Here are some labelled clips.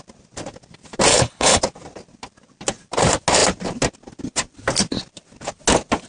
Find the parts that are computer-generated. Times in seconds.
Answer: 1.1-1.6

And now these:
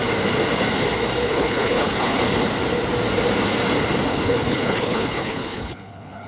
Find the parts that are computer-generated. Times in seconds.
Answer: 1.3-2.2; 4.1-6.3

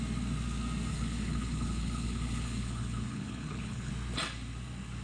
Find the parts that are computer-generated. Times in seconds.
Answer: 0.9-3.9

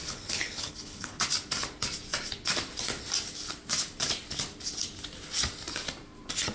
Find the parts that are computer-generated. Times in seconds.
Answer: 0.0-1.2

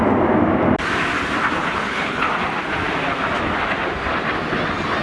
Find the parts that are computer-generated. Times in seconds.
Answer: 1.6-2.3

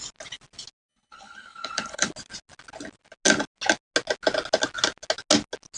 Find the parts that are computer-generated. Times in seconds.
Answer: 0.9-2.1

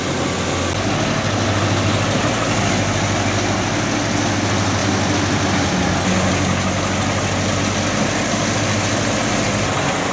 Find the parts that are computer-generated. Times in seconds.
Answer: none

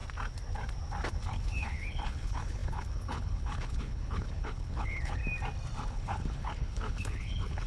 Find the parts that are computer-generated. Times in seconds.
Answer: 1.1-5.2; 5.9-7.7